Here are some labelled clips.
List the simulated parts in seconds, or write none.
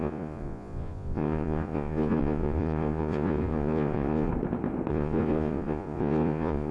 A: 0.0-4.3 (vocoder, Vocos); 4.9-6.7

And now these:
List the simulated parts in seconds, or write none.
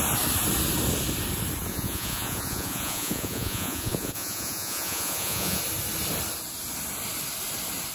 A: 1.7-5.6 (vocoder, Vocos)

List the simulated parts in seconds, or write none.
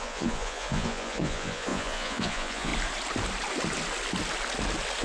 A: 0.0-2.7 (vocoder, Vocos)